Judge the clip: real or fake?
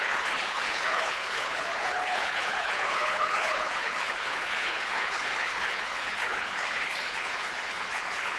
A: fake